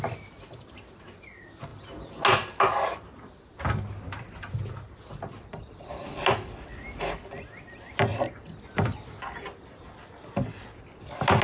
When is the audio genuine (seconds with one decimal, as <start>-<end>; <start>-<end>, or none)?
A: 0.0-11.4